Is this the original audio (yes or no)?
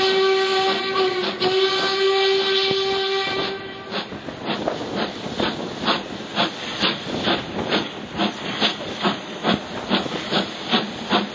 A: yes